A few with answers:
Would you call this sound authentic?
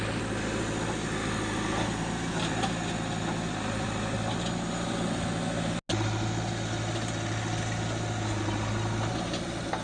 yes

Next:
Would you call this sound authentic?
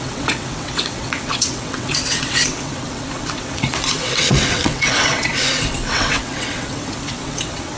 no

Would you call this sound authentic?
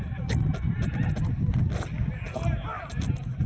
yes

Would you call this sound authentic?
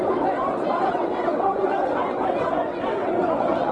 no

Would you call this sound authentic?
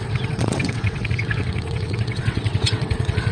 no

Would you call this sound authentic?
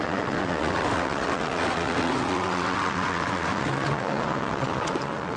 no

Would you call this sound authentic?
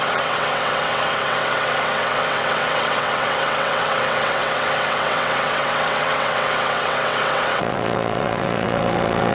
no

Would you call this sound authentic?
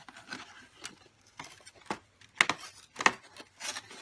yes